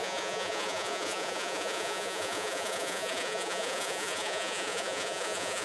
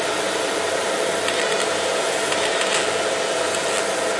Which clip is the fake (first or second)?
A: first